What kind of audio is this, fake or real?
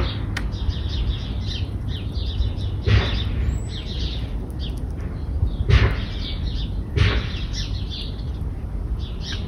real